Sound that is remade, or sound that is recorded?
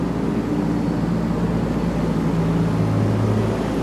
recorded